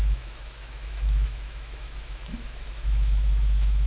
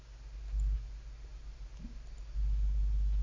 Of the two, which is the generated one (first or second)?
first